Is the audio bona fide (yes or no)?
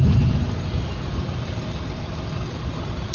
yes